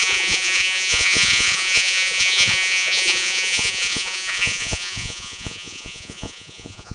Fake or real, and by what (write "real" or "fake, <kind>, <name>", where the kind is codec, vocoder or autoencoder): fake, vocoder, Vocos